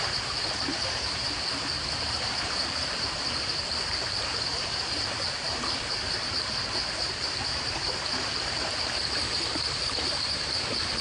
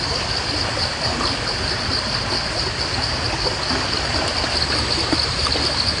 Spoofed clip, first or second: first